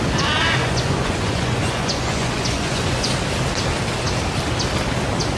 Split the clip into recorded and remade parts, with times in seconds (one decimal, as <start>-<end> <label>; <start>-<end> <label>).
0.0-0.6 recorded; 0.6-3.1 remade; 3.1-5.4 recorded